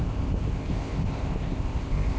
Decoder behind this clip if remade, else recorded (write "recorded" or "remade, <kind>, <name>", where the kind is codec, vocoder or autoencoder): remade, codec, ZipCodec